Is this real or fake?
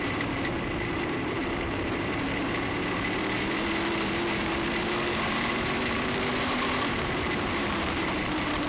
fake